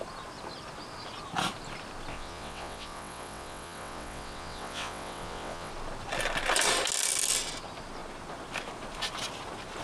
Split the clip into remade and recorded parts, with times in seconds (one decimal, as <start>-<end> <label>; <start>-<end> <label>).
0.0-2.1 recorded; 2.1-5.7 remade; 5.7-9.8 recorded